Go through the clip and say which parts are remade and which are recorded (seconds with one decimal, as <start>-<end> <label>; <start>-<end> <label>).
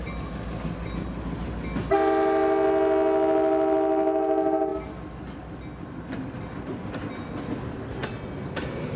0.0-9.0 recorded